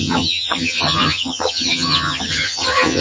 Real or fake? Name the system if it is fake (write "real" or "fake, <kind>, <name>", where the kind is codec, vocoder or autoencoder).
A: fake, vocoder, HiFi-GAN